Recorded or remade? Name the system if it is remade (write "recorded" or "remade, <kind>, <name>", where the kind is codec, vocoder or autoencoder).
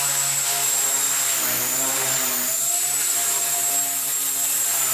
recorded